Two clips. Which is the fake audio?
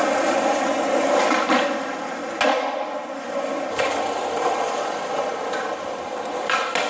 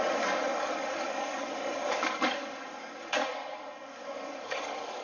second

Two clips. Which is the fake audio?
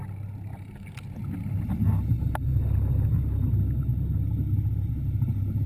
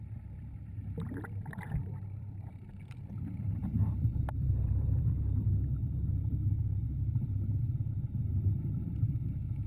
second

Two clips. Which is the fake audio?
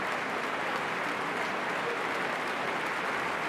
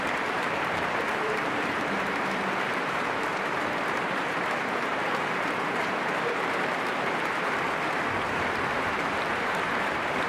second